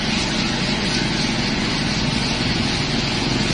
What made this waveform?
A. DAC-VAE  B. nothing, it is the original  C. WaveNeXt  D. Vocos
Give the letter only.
D